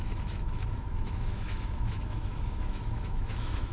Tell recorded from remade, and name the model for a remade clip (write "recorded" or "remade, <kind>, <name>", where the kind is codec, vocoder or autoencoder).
remade, autoencoder, DAC-VAE